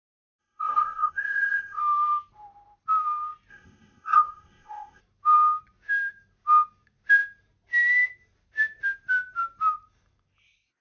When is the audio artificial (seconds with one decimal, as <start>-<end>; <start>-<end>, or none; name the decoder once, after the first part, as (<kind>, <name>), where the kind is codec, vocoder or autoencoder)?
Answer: 0.4-1.8 (codec, ZipCodec); 3.5-5.0